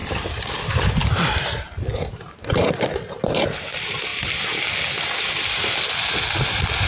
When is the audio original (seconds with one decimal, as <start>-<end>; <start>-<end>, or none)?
0.5-6.9